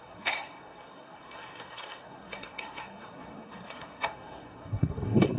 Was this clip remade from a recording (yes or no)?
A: yes